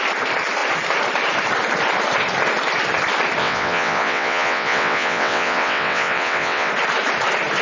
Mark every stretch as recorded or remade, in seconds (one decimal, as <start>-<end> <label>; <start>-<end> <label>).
0.0-3.4 recorded; 3.4-6.7 remade; 6.7-7.6 recorded